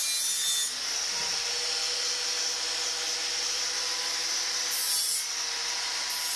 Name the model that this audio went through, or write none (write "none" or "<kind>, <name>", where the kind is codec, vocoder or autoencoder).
none